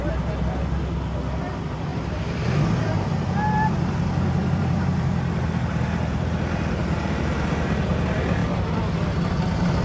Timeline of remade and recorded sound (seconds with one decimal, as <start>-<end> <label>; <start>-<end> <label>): 0.0-1.9 recorded; 1.9-2.4 remade; 2.4-4.4 recorded; 4.4-7.9 remade; 7.9-9.8 recorded

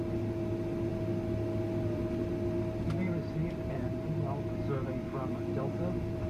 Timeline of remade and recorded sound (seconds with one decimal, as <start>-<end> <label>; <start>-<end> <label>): 0.0-3.4 recorded; 3.4-4.0 remade; 4.0-4.8 recorded; 4.8-6.3 remade